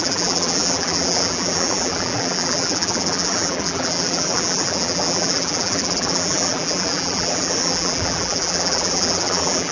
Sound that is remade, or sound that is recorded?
remade